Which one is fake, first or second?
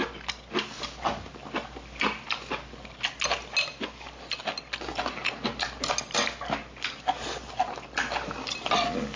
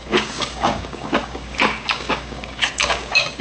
second